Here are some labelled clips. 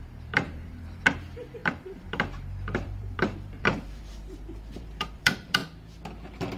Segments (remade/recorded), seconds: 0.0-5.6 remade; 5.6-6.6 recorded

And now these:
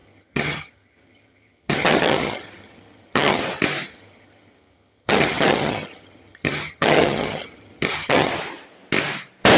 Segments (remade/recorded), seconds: 0.0-3.4 remade; 3.4-3.9 recorded; 3.9-8.3 remade; 8.3-9.6 recorded

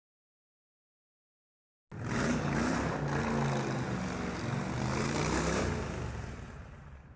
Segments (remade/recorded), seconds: 0.0-7.2 recorded

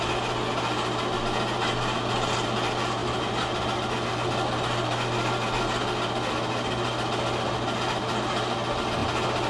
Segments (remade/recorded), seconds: 0.0-9.5 recorded